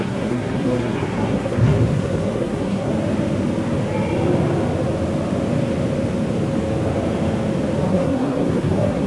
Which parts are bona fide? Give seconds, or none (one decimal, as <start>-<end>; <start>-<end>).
2.9-7.9